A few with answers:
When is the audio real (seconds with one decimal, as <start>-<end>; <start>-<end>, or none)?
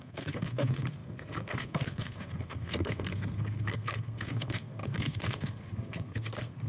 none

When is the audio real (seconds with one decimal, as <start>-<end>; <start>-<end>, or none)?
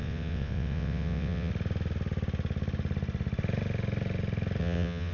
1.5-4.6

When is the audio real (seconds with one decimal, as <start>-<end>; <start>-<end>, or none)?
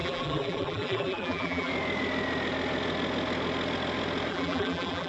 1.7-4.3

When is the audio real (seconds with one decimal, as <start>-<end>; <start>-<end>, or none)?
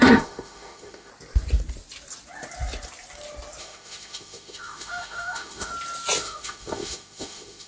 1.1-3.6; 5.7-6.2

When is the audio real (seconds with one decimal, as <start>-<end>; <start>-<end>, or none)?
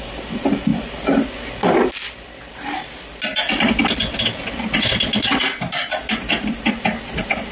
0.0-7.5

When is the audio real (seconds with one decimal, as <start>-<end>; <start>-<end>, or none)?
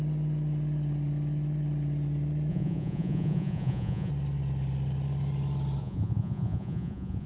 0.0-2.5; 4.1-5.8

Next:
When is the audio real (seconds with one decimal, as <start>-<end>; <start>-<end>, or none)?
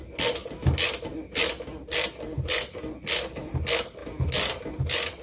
0.0-5.2